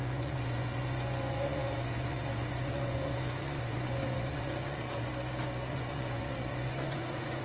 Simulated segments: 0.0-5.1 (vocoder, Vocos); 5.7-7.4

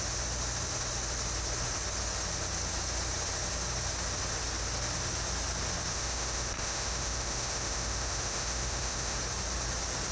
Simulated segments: 5.9-9.2 (autoencoder, DAC-VAE)

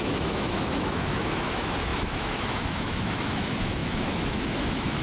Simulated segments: 0.0-5.0 (autoencoder, DAC-VAE)